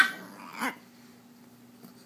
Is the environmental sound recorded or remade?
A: recorded